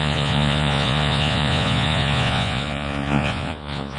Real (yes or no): no